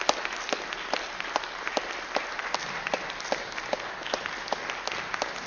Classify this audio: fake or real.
real